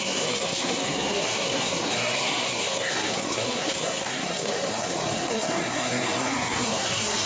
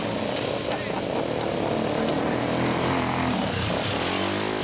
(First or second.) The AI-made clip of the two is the first